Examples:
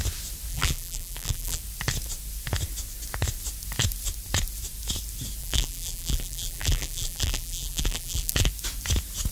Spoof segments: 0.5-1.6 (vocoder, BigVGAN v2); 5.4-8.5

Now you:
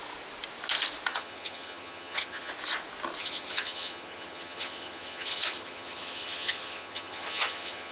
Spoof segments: 1.1-2.5 (vocoder, HiFi-GAN); 3.2-7.9

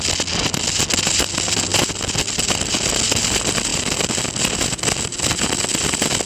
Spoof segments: none

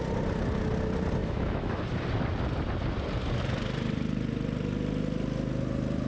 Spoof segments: 1.2-1.8 (autoencoder, DAC-VAE)

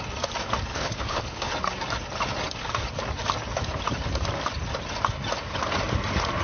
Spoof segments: 0.7-1.5 (codec, HILCodec)

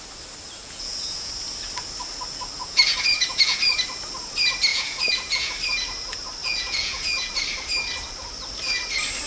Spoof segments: 0.6-1.3 (vocoder, Vocos); 2.6-3.6; 4.7-5.5; 6.4-7.3

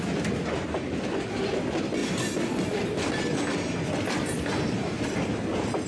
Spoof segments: none

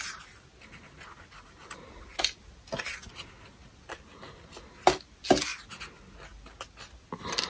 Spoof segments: none